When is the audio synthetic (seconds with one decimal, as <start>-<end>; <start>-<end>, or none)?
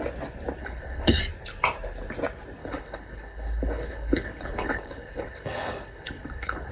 0.6-1.2; 2.6-6.7